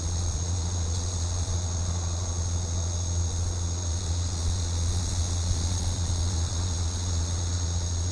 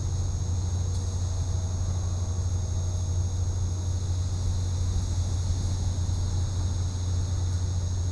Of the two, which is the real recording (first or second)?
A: second